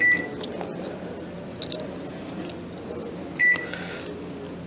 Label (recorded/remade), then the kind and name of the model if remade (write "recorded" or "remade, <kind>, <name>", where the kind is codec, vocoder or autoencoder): recorded